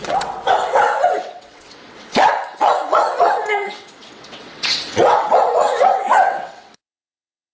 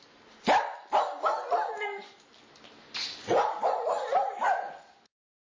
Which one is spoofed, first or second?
first